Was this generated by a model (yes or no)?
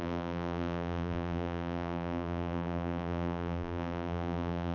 yes